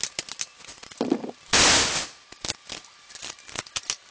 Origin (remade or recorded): recorded